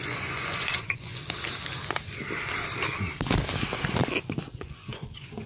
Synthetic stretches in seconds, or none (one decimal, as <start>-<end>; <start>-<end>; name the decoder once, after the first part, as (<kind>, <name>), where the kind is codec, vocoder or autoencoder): 0.0-1.2 (vocoder, Vocos); 4.5-5.5